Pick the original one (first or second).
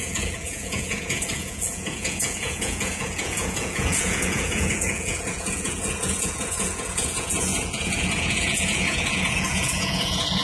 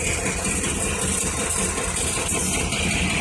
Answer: second